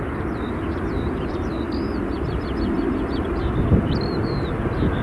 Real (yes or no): yes